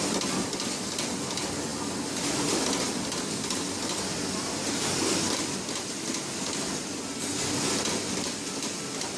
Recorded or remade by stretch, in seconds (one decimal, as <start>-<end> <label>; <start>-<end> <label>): 0.0-9.2 recorded